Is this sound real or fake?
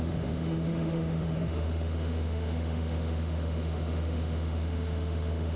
fake